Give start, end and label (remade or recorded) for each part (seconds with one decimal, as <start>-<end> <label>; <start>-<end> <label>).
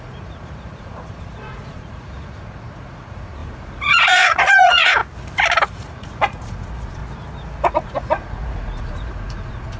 0.0-5.0 remade; 5.0-5.7 recorded; 5.7-7.0 remade; 7.0-7.7 recorded; 7.7-9.8 remade